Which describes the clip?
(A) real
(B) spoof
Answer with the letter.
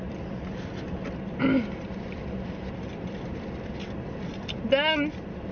A